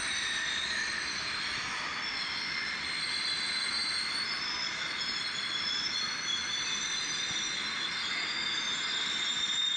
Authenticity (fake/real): real